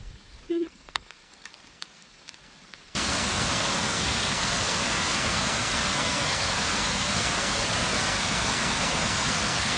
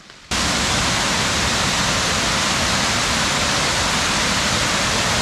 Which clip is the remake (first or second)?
first